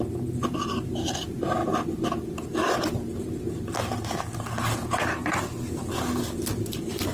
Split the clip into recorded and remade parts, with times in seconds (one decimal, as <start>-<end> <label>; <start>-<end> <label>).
0.0-7.1 remade